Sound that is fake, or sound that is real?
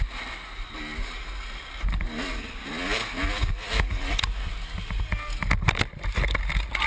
real